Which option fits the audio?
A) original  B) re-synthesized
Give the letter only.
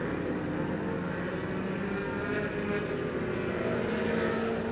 A